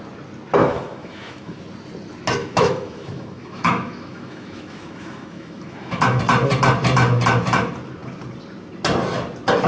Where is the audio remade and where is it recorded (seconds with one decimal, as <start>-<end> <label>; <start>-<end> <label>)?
0.0-0.6 recorded; 0.6-1.6 remade; 1.6-2.4 recorded; 2.4-6.2 remade; 6.2-9.7 recorded